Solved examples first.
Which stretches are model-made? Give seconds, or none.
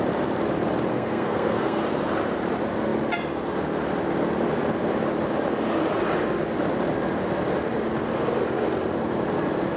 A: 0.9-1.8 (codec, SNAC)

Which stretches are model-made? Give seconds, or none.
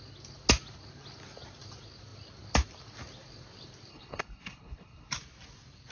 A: 3.9-5.1 (codec, HILCodec)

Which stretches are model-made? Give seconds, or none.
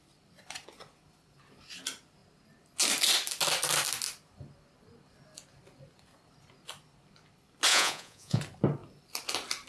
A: 7.7-8.4 (vocoder, Vocos)